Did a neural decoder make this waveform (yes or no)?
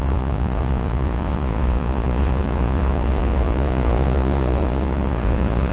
yes